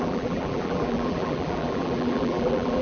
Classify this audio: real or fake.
fake